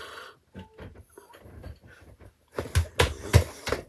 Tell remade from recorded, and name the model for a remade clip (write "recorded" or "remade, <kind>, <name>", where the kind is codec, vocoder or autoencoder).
recorded